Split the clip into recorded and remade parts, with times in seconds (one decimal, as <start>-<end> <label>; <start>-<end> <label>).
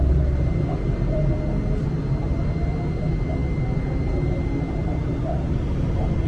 0.0-6.3 recorded